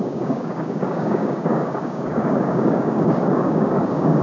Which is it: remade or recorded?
remade